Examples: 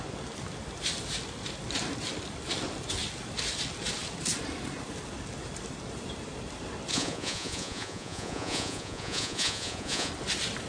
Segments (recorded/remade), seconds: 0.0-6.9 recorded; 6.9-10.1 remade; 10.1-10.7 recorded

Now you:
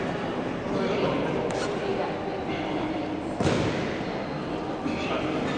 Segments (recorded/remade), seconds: 0.0-1.9 remade; 1.9-2.5 recorded; 2.5-5.6 remade

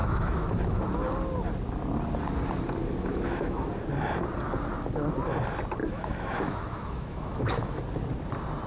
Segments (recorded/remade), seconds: 0.0-0.8 remade; 0.8-2.8 recorded; 2.8-3.7 remade; 3.7-5.8 recorded; 5.8-7.8 remade; 7.8-8.7 recorded

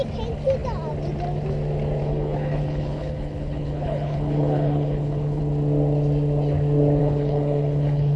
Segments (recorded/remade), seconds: 0.0-2.0 recorded; 2.0-5.4 remade; 5.4-7.0 recorded; 7.0-8.2 remade

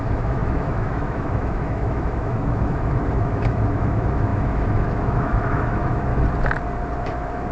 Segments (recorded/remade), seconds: 0.0-6.1 remade; 6.1-7.0 recorded; 7.0-7.5 remade

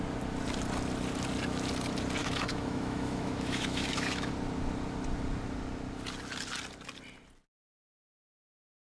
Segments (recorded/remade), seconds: 0.0-2.2 recorded; 2.2-4.3 remade; 4.3-8.8 recorded

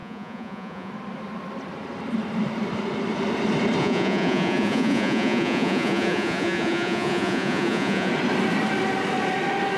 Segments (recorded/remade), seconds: 0.0-0.9 remade; 0.9-3.8 recorded; 3.8-8.1 remade; 8.1-9.8 recorded